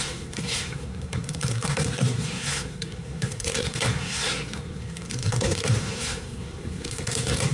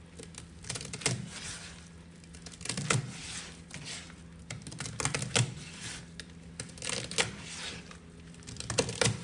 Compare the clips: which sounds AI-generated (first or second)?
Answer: first